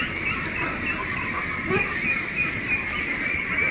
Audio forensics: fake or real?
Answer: real